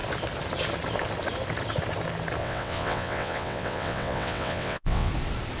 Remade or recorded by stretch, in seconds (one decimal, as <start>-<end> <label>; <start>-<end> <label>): 0.0-2.4 recorded; 2.4-5.1 remade; 5.1-5.6 recorded